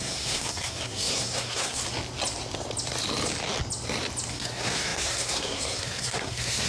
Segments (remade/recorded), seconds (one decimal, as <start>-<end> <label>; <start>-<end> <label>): 0.0-1.8 remade; 1.8-4.3 recorded; 4.3-6.7 remade